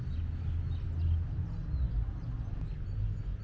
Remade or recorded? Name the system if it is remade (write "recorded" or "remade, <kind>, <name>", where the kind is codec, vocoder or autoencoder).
recorded